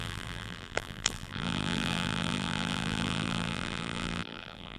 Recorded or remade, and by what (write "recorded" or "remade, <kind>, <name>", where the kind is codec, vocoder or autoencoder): remade, vocoder, BigVGAN v2